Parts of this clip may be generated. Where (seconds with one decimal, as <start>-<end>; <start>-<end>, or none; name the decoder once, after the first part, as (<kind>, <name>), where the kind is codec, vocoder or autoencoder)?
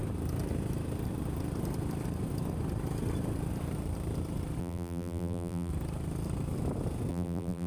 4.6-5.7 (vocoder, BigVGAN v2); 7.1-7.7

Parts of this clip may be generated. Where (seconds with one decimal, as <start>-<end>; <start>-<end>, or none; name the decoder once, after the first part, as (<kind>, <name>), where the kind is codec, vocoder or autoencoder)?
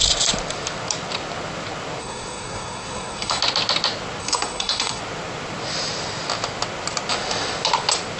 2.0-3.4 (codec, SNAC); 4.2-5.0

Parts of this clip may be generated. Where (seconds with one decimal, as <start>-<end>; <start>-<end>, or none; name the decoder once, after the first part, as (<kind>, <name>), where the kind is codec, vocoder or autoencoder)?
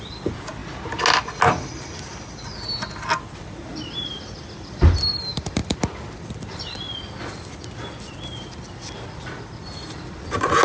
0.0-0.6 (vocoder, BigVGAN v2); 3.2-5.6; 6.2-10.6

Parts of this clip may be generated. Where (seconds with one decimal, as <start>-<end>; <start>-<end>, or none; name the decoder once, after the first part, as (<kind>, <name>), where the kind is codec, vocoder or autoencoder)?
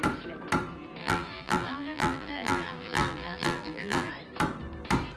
1.0-4.1 (vocoder, BigVGAN v2)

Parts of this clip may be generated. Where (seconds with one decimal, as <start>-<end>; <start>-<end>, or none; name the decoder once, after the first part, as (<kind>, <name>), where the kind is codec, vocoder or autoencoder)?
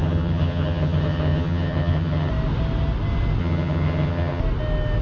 0.0-2.3 (vocoder, HiFi-GAN); 3.4-4.4